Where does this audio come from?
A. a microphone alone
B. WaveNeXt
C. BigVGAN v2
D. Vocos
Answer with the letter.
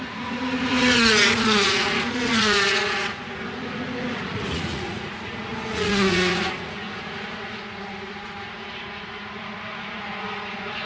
D